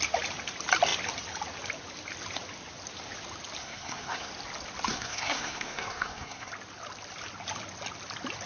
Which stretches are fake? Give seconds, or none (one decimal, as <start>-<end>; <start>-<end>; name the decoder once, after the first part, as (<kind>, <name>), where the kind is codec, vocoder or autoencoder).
3.6-4.3 (codec, SNAC); 4.9-6.5